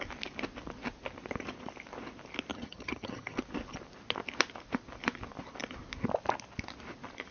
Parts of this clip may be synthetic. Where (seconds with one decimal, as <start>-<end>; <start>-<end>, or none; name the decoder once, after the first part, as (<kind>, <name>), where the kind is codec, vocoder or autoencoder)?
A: 2.5-3.4 (vocoder, HiFi-GAN)